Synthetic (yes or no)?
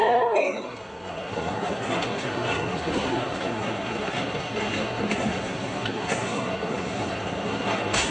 yes